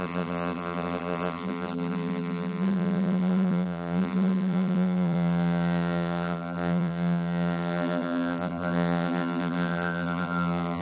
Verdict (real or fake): fake